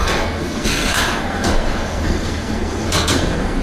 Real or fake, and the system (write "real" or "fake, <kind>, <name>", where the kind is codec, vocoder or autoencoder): fake, codec, SNAC